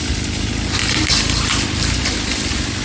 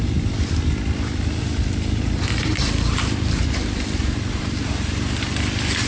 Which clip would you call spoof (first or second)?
second